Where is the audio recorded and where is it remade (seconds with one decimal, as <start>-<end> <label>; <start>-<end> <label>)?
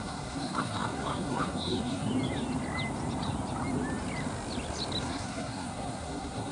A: 0.0-2.1 remade; 2.1-5.0 recorded; 5.0-6.5 remade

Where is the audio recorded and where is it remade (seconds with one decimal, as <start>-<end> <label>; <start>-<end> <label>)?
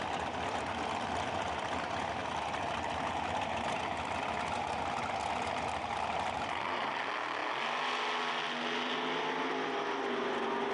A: 0.0-10.7 recorded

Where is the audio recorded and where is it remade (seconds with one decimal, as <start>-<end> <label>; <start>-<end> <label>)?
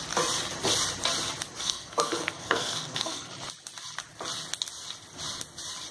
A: 0.0-1.6 recorded; 1.6-3.3 remade; 3.3-5.9 recorded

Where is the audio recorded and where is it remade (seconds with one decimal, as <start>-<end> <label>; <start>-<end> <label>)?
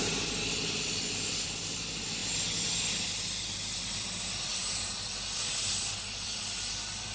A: 0.0-7.1 recorded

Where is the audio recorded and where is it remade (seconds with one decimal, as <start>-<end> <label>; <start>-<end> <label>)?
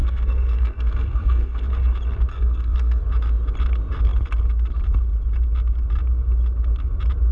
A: 0.0-1.6 remade; 1.6-2.3 recorded; 2.3-3.0 remade; 3.0-7.3 recorded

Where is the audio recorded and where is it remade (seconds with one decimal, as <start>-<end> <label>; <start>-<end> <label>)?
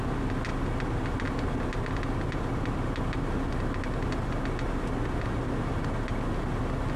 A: 0.0-7.0 recorded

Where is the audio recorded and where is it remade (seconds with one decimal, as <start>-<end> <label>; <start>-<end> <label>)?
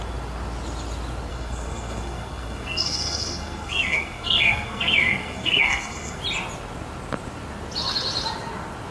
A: 0.0-1.3 recorded; 1.3-6.2 remade; 6.2-8.9 recorded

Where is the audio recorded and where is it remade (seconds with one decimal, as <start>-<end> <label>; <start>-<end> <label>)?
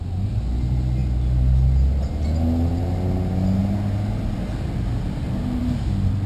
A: 0.0-6.3 recorded